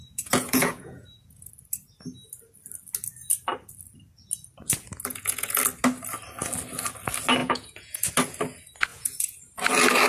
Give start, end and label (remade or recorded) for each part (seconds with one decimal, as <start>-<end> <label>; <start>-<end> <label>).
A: 0.0-1.5 remade; 1.5-5.1 recorded; 5.1-5.6 remade; 5.6-7.4 recorded; 7.4-8.0 remade; 8.0-8.9 recorded; 8.9-9.4 remade; 9.4-10.1 recorded